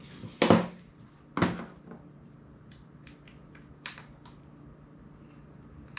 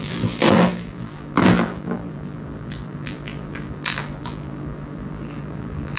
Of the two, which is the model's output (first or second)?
second